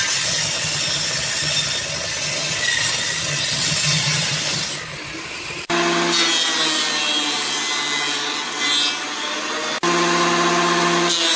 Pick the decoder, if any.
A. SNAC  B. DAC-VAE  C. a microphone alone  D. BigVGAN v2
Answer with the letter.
C